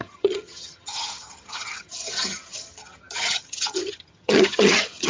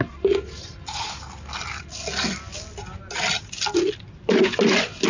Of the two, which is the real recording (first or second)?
second